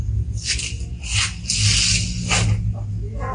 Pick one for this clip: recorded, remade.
recorded